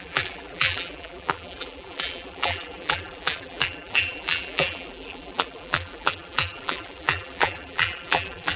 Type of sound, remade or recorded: remade